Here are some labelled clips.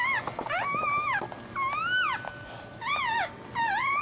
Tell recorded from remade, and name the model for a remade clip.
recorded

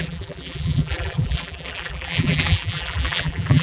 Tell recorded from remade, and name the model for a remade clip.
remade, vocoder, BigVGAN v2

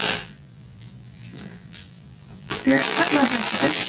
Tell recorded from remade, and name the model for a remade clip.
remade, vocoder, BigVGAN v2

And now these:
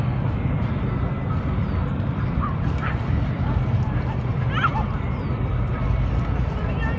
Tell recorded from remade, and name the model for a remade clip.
remade, vocoder, BigVGAN v2